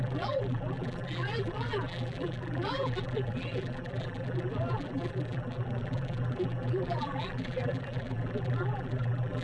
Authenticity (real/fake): fake